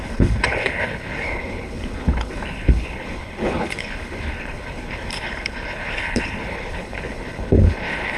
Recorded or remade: remade